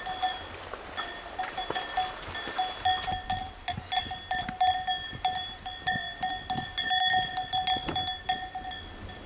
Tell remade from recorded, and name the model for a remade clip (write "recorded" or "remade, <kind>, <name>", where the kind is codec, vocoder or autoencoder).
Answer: recorded